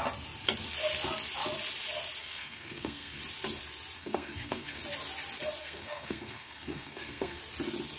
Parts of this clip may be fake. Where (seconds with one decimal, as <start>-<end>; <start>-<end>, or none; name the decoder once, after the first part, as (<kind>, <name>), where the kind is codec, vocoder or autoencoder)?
2.2-3.2 (codec, SNAC); 4.0-4.8; 5.6-7.4

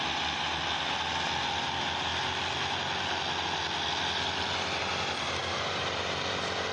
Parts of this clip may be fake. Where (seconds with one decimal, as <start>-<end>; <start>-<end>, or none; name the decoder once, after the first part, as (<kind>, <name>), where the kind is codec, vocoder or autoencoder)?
5.4-6.0 (vocoder, BigVGAN v2)

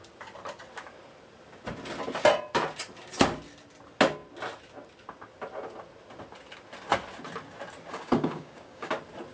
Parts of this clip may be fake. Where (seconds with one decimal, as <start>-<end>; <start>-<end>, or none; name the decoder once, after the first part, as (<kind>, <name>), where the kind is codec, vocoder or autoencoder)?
7.9-8.9 (codec, DAC)

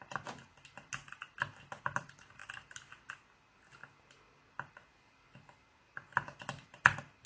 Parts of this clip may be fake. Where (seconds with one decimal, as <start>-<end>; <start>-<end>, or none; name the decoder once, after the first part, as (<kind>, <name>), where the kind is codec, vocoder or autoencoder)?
none